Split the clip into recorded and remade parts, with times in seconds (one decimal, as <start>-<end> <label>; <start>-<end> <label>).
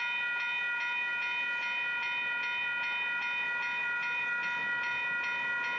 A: 0.0-5.8 recorded